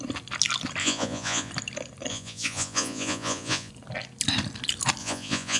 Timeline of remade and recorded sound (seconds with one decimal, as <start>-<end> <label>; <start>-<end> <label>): 0.0-0.8 recorded; 0.8-1.5 remade; 1.5-2.1 recorded; 2.1-3.7 remade; 3.7-5.0 recorded; 5.0-5.6 remade